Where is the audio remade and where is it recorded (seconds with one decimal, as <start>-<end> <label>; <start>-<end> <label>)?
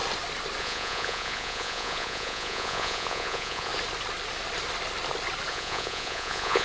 0.0-0.6 recorded; 0.6-3.7 remade; 3.7-5.5 recorded; 5.5-6.6 remade